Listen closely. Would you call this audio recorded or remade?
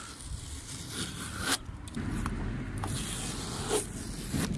remade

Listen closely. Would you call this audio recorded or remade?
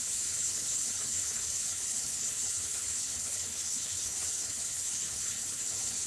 remade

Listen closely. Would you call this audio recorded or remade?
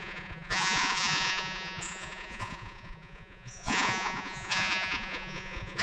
remade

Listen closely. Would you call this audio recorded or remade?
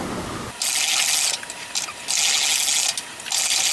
recorded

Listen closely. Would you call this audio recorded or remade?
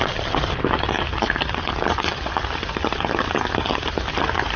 recorded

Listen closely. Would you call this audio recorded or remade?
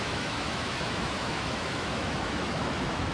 remade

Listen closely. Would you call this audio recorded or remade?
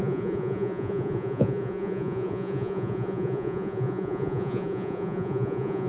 remade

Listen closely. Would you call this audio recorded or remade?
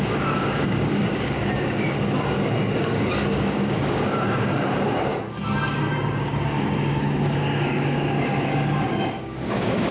remade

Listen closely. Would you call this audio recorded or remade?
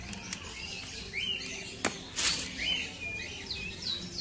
recorded